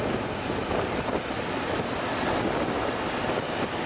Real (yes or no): yes